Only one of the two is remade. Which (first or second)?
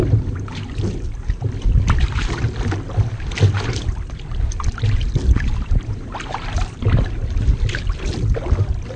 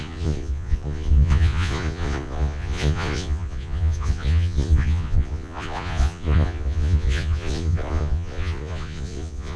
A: second